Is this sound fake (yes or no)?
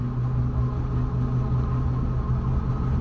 no